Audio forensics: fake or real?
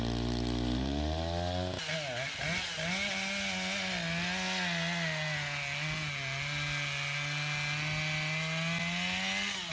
real